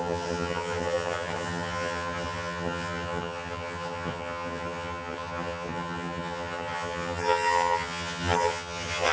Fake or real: fake